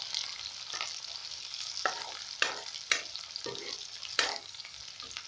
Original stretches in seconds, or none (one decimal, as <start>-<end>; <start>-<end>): 0.0-4.3; 4.8-5.3